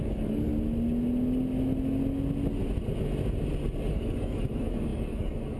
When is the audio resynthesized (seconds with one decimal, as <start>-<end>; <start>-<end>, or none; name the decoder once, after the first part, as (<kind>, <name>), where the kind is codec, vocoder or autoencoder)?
0.0-0.5 (codec, DAC); 3.9-5.6